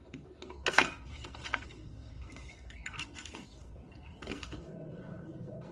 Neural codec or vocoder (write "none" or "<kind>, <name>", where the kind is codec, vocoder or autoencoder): codec, SNAC